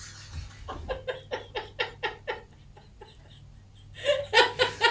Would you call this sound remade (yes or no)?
no